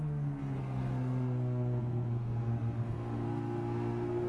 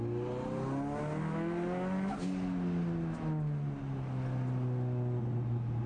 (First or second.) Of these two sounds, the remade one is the first